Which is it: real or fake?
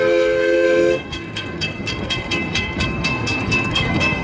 fake